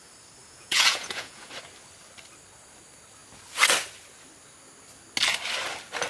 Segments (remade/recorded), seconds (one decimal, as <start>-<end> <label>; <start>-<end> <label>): 0.0-0.4 recorded; 0.4-1.5 remade; 1.5-6.1 recorded